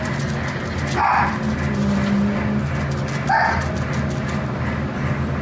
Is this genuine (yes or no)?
yes